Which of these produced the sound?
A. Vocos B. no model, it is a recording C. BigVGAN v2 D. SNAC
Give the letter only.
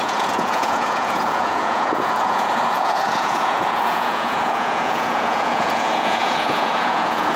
A